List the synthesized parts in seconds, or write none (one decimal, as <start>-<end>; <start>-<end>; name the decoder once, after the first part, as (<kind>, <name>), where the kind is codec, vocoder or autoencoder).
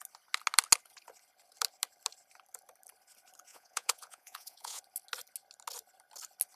3.5-4.8 (vocoder, Vocos)